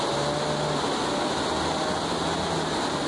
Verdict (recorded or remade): recorded